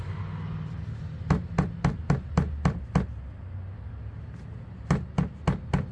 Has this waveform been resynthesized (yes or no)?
no